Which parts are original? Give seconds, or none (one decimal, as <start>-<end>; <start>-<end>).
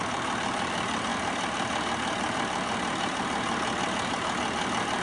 0.0-5.0